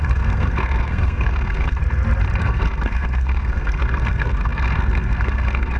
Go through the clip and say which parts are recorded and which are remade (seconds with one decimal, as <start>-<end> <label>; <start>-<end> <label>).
0.0-1.8 remade; 1.8-2.4 recorded; 2.4-5.8 remade